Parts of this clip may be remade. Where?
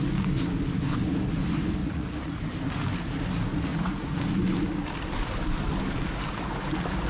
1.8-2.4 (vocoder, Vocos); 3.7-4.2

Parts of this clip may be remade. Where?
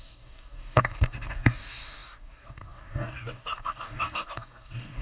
0.0-5.0 (codec, DAC)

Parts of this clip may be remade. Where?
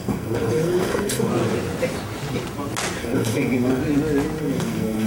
0.0-1.3 (codec, SNAC); 3.0-3.8; 4.4-5.1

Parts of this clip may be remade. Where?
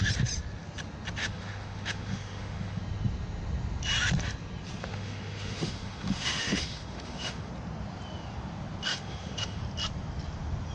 1.2-2.8 (autoencoder, DAC-VAE); 4.8-7.5; 8.9-9.6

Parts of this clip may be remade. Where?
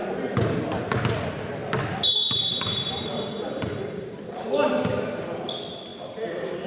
4.0-6.7 (vocoder, BigVGAN v2)